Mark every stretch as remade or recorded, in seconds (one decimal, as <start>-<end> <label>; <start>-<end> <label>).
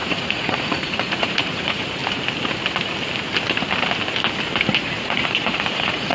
0.0-2.0 remade; 2.0-5.0 recorded; 5.0-6.1 remade